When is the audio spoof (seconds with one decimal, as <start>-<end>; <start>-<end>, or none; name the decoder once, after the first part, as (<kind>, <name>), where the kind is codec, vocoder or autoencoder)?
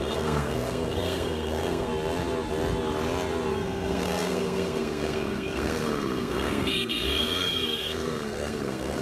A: 0.0-1.9 (codec, SNAC); 3.5-9.0